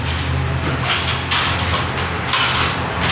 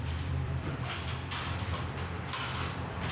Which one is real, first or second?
first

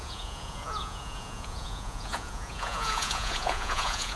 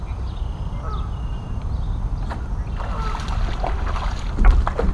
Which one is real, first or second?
second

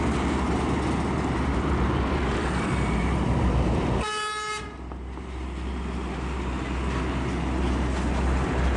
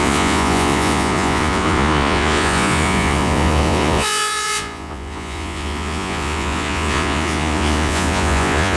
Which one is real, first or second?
first